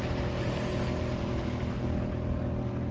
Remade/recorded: recorded